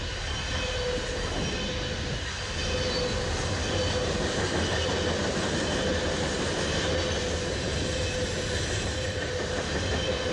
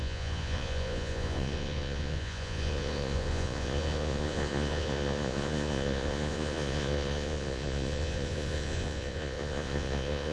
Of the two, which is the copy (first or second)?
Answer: second